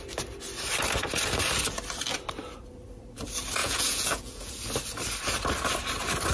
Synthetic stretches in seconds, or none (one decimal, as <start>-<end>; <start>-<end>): 3.6-4.5